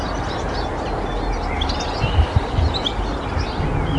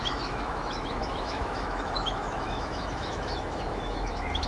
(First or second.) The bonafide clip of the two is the first